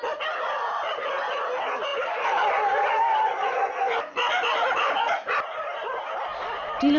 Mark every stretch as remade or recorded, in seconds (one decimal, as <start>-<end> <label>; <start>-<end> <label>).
0.0-7.0 recorded